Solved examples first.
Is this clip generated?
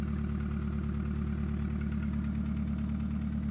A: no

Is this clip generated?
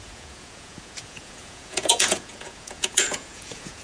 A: yes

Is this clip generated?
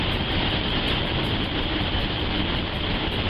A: no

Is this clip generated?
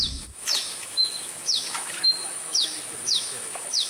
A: yes